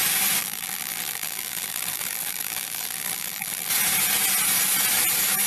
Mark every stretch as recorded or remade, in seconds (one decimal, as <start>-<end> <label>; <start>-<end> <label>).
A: 0.0-0.4 recorded; 0.4-3.7 remade; 3.7-5.5 recorded